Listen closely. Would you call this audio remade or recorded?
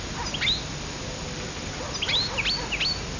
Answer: recorded